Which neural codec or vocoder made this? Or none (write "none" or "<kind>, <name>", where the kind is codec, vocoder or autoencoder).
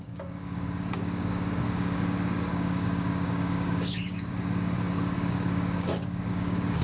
codec, DAC